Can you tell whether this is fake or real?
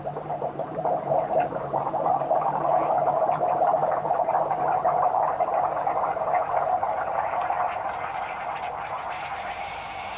fake